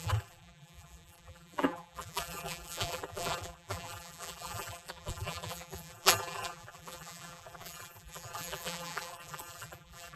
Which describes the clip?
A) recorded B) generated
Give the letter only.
B